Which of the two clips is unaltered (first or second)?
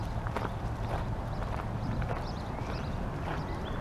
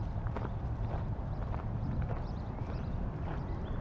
first